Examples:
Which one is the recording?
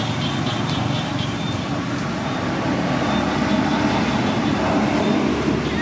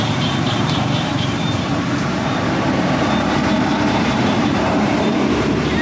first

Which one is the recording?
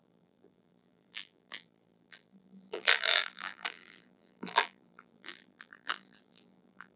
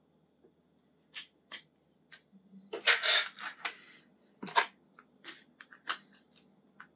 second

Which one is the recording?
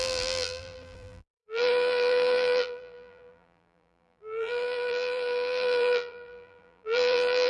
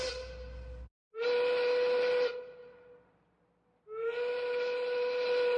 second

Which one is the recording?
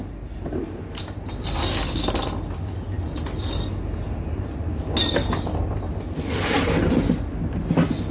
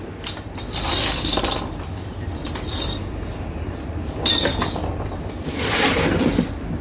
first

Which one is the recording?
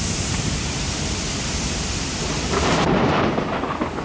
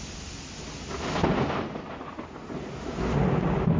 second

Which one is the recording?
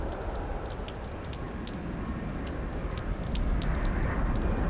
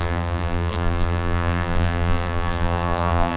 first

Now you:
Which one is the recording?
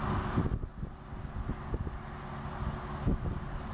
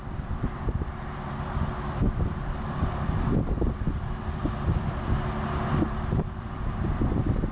first